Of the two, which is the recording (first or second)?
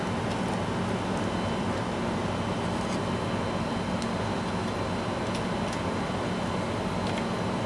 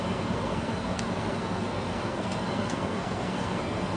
first